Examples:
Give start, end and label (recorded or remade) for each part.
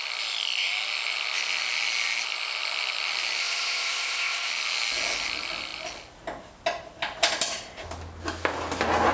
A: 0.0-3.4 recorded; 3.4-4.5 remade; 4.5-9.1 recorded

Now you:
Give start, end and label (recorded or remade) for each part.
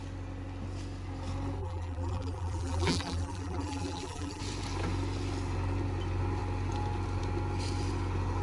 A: 0.0-1.6 recorded; 1.6-4.4 remade; 4.4-8.4 recorded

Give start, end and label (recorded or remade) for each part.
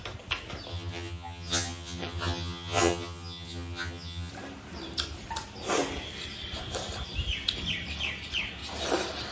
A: 0.0-0.7 recorded; 0.7-4.3 remade; 4.3-9.3 recorded